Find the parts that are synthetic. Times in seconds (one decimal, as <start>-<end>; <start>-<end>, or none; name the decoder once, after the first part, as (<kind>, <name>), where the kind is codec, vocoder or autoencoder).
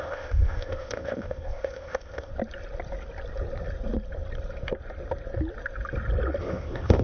0.0-2.3 (codec, ZipCodec); 6.4-7.0